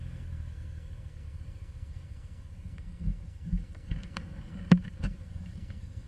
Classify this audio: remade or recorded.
remade